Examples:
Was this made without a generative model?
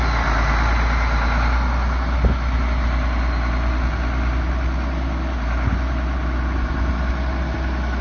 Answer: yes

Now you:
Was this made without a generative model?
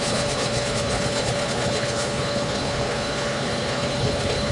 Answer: no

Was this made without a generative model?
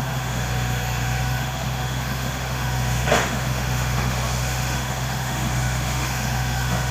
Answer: no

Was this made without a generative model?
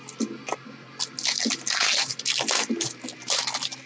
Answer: yes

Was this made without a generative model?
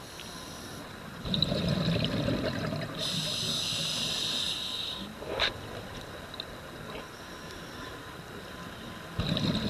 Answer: yes